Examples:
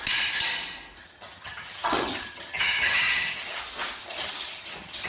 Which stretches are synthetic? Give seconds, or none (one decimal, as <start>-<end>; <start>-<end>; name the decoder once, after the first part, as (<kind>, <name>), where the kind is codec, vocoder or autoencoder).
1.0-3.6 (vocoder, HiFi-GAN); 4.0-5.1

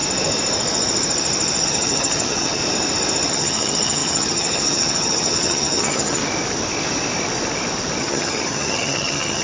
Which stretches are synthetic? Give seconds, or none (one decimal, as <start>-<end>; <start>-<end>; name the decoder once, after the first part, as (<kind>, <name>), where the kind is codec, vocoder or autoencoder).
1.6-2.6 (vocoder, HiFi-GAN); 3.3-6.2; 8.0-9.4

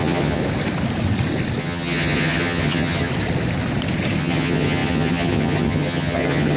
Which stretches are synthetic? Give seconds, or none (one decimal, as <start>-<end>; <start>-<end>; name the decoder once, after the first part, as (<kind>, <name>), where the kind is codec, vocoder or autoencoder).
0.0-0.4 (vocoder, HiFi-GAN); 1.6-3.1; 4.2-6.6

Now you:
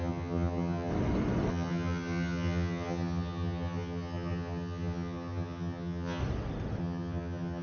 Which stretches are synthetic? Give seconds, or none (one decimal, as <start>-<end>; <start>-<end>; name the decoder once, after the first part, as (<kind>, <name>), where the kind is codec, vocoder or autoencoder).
0.0-0.9 (vocoder, HiFi-GAN); 1.5-6.2; 6.8-7.6

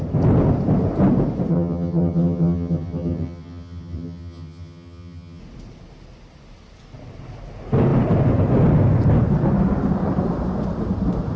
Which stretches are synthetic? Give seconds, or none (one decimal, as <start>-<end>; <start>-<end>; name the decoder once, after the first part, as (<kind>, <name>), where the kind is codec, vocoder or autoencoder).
1.5-5.4 (vocoder, HiFi-GAN)

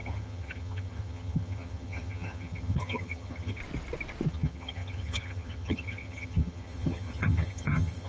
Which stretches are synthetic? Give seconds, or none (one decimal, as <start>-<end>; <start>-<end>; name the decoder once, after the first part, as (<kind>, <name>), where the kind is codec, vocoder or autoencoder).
0.0-3.6 (vocoder, HiFi-GAN); 4.3-8.1

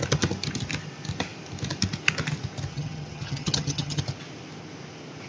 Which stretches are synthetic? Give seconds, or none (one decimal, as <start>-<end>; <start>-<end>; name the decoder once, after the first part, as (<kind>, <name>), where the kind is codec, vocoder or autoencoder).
2.7-4.0 (vocoder, HiFi-GAN)

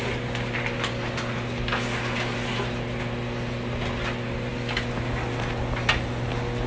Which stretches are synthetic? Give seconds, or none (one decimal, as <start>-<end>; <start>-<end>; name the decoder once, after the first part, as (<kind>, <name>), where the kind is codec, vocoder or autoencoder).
none